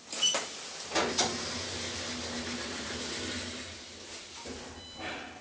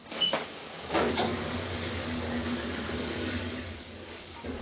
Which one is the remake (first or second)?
second